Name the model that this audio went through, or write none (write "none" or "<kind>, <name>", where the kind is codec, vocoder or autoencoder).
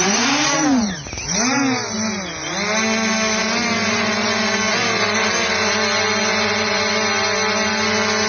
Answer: none